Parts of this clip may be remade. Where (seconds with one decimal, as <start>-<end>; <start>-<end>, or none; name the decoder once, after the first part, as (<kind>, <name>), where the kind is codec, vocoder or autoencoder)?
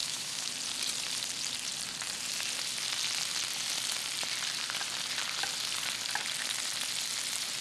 0.0-0.5 (autoencoder, DAC-VAE)